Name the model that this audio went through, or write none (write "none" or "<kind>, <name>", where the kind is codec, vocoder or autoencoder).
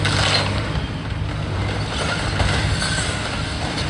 none